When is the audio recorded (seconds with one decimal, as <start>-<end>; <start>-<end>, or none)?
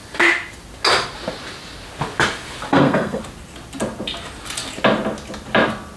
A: 0.0-2.7; 3.2-6.0